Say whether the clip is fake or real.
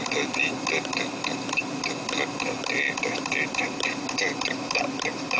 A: real